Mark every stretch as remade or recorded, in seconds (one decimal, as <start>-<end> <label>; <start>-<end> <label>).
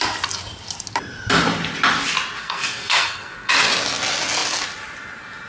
0.0-2.4 recorded; 2.4-3.5 remade; 3.5-5.5 recorded